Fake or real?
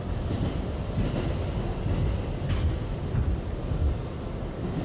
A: real